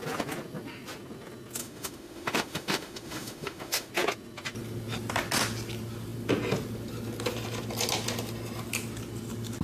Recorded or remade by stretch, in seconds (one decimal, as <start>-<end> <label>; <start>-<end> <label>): 0.0-1.6 recorded; 1.6-3.9 remade; 3.9-9.6 recorded